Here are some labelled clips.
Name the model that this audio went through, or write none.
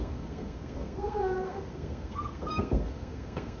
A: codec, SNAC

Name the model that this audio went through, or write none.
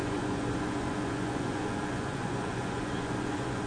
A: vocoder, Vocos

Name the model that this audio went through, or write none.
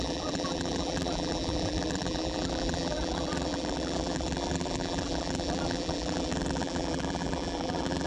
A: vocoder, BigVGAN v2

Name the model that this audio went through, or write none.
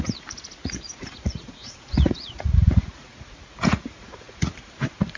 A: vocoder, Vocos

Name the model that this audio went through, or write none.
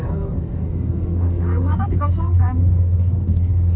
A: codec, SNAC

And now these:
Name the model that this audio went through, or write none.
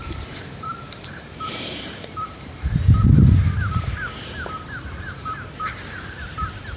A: vocoder, BigVGAN v2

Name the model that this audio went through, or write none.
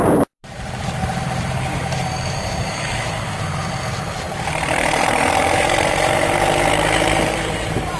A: vocoder, BigVGAN v2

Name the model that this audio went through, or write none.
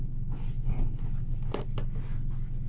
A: none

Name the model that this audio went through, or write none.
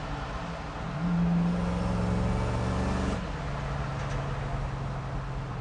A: none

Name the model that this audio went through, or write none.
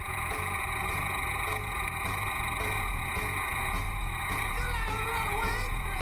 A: vocoder, Vocos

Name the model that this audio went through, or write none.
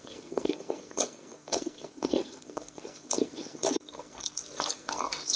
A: codec, SNAC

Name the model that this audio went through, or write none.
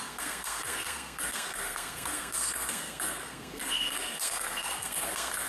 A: codec, SNAC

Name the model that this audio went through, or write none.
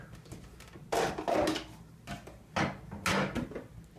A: none